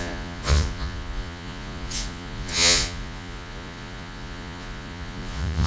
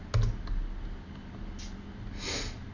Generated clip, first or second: first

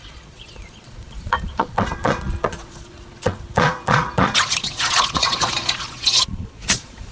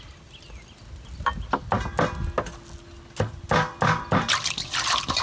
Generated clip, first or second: first